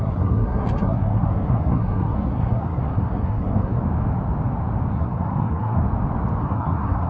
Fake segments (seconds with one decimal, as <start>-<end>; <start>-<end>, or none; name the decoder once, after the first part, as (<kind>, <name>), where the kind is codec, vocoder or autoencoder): 0.0-3.8 (codec, SNAC); 4.9-5.8; 6.4-7.1